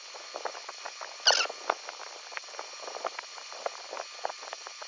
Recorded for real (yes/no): yes